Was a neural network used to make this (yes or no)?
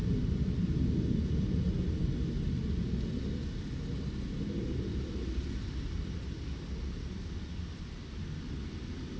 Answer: no